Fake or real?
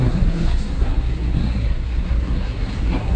fake